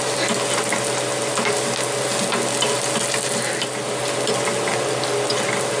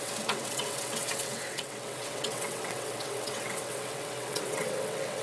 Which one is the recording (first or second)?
first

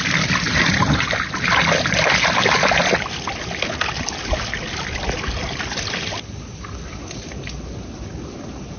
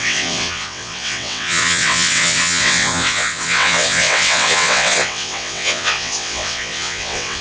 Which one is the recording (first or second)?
first